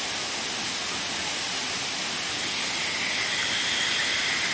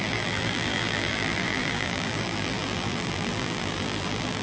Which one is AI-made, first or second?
second